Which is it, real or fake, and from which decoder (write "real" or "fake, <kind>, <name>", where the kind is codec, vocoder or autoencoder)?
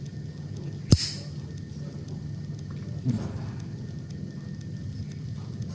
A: real